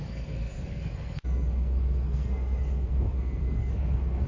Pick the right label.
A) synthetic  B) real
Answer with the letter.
A